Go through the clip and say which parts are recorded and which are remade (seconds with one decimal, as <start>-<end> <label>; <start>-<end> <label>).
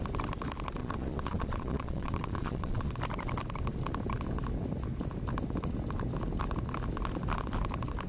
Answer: 0.0-0.8 recorded; 0.8-2.9 remade; 2.9-8.1 recorded